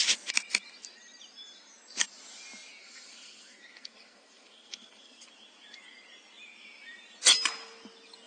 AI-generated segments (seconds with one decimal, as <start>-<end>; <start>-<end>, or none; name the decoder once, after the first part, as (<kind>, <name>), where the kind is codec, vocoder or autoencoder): 2.8-5.2 (codec, SNAC)